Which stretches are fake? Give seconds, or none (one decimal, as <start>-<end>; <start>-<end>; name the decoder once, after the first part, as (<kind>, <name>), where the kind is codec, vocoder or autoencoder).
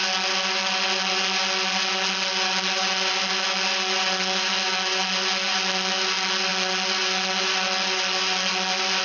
none